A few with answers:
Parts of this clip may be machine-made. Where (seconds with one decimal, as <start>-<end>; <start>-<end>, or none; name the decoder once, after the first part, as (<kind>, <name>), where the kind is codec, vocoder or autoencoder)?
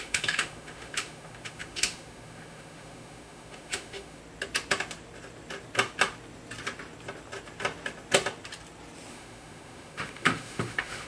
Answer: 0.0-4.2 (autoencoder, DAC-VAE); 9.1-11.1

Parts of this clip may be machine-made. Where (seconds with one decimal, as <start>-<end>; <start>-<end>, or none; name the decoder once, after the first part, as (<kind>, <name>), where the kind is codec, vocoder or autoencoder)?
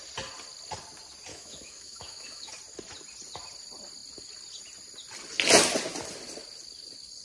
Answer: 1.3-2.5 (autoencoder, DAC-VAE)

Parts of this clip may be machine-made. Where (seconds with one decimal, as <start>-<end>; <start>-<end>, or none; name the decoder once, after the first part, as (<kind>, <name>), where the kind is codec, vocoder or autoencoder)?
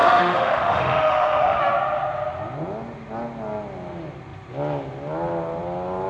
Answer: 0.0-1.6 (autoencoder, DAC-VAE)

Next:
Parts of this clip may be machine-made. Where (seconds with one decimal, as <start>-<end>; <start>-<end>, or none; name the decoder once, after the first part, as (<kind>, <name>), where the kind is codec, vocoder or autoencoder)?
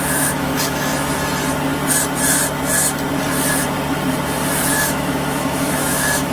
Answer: 0.0-0.9 (autoencoder, DAC-VAE); 4.7-6.3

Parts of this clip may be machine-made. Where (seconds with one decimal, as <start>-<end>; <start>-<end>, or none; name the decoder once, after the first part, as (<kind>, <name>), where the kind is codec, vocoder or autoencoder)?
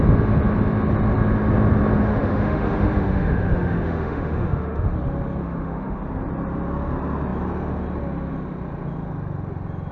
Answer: 2.1-4.9 (autoencoder, DAC-VAE); 5.4-6.0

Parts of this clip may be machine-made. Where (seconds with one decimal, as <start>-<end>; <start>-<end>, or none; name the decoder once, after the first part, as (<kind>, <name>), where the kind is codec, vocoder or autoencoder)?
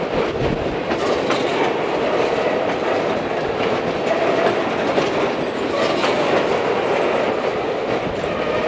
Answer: none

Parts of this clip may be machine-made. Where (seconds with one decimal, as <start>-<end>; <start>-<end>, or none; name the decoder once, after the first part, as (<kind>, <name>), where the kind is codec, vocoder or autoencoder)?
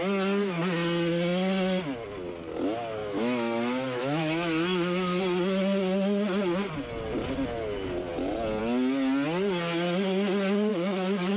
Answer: 3.0-5.2 (autoencoder, DAC-VAE); 10.7-11.4